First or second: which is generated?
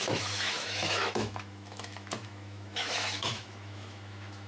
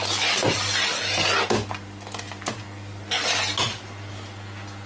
first